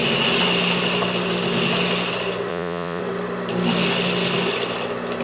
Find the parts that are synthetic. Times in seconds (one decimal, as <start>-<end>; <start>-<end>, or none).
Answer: 2.5-3.0